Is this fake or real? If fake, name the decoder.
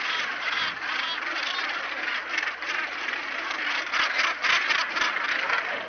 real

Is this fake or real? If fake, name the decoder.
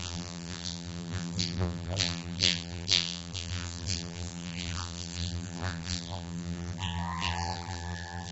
fake, vocoder, BigVGAN v2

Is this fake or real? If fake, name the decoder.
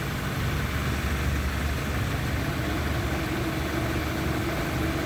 real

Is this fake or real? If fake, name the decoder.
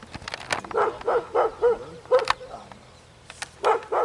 real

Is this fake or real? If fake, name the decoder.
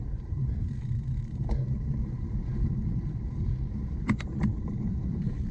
fake, vocoder, BigVGAN v2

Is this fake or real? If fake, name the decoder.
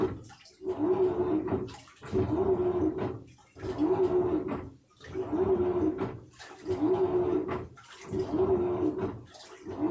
real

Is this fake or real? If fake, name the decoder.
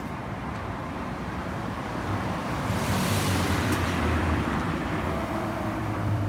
fake, vocoder, BigVGAN v2